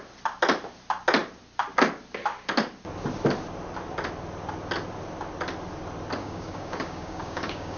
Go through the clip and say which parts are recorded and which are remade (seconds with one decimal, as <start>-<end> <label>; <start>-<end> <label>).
0.0-6.2 recorded; 6.2-7.8 remade